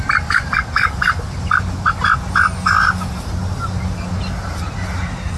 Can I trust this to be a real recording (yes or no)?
yes